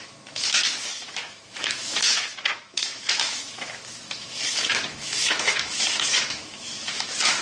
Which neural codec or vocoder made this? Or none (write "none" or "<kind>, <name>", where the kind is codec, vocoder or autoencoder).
autoencoder, DAC-VAE